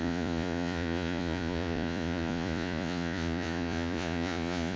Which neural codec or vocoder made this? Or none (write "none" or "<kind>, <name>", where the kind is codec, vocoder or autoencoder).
vocoder, Vocos